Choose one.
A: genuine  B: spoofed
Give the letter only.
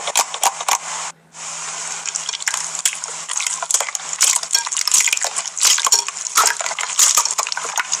A